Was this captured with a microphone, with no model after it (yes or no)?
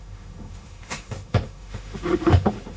no